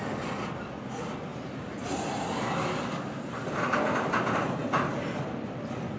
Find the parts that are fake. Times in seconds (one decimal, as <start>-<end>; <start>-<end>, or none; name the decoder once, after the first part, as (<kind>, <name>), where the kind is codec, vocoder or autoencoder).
none

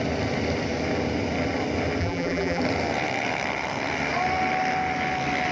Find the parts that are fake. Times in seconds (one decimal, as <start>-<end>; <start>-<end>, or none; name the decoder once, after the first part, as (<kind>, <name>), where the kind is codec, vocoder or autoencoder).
2.0-2.6 (vocoder, BigVGAN v2)